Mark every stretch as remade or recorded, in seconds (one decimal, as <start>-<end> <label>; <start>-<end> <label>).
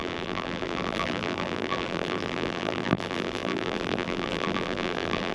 0.0-5.3 remade